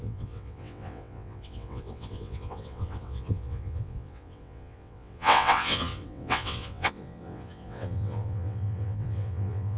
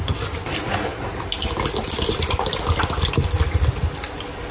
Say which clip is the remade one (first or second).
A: first